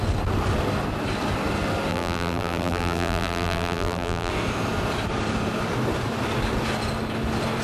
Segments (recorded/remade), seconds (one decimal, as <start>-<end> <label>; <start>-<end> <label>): 0.0-1.9 recorded; 1.9-4.3 remade; 4.3-7.6 recorded